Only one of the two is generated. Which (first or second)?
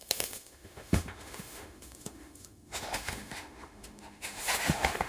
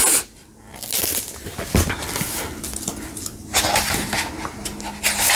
first